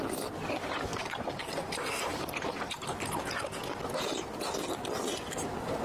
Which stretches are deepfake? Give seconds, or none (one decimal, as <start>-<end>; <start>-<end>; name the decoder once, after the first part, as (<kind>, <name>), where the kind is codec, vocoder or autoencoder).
0.9-2.1 (vocoder, BigVGAN v2)